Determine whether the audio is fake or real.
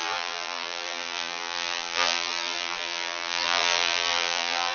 fake